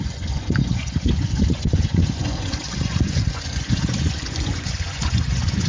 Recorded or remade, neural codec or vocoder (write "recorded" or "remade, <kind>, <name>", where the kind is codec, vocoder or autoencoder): remade, vocoder, Vocos